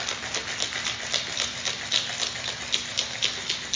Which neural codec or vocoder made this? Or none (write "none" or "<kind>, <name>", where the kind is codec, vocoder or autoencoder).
none